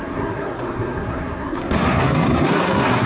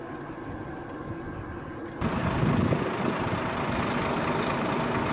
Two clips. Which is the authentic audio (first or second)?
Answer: second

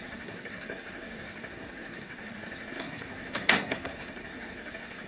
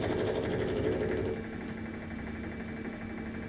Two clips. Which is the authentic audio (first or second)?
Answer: second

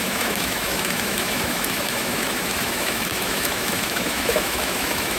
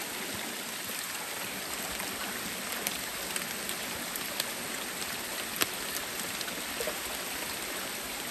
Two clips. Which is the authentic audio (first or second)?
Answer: second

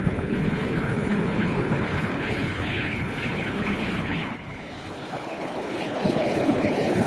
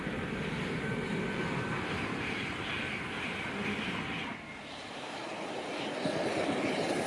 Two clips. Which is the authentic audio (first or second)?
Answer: second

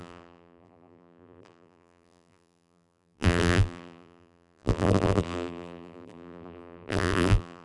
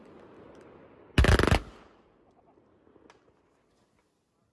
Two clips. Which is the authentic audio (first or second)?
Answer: second